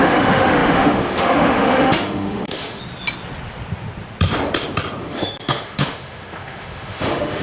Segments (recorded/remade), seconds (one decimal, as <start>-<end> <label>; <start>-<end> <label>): 0.0-2.8 remade; 2.8-5.0 recorded; 5.0-7.4 remade